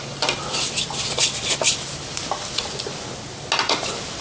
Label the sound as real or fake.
real